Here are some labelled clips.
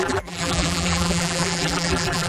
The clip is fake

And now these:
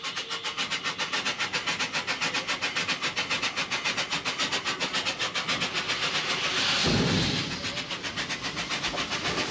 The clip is real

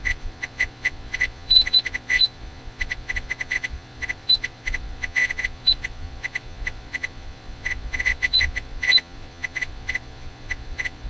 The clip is fake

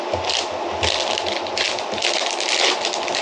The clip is real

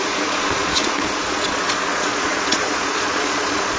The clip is fake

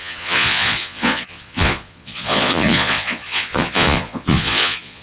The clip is fake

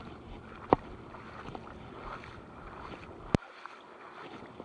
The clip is real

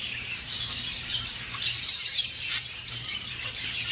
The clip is fake